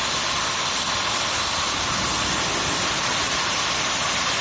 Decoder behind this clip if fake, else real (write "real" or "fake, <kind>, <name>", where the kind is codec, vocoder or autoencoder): real